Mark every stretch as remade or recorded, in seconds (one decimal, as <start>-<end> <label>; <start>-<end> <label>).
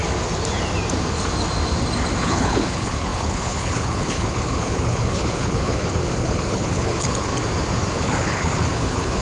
0.0-2.2 recorded; 2.2-7.3 remade; 7.3-7.9 recorded; 7.9-9.2 remade